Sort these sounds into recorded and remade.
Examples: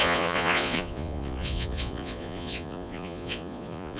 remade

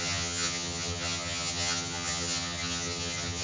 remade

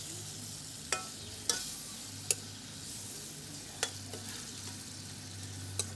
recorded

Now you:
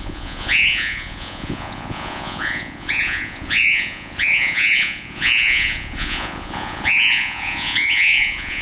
remade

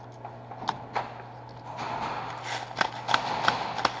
recorded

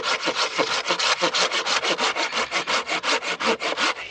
recorded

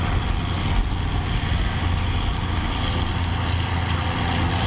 recorded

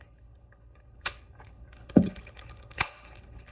remade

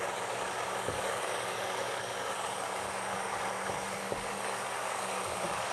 remade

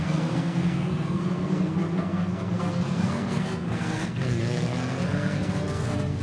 remade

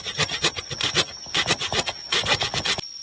recorded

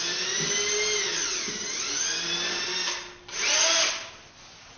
recorded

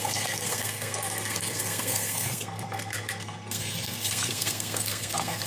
remade